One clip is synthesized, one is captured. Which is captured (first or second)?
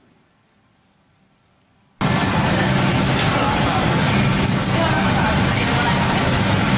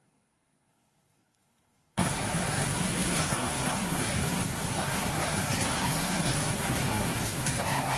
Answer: first